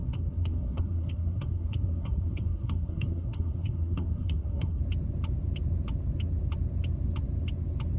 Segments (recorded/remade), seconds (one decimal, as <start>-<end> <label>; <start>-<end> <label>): 0.0-4.8 remade; 4.8-8.0 recorded